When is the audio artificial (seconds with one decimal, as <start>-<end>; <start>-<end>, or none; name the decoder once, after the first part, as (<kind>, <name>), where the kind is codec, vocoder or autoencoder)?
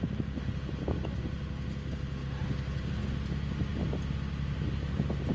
none